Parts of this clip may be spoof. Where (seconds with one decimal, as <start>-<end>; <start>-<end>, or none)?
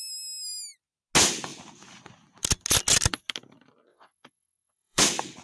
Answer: 3.9-5.0